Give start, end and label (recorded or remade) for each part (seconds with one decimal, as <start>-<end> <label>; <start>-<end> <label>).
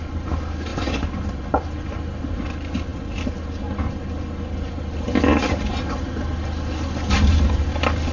0.0-8.1 recorded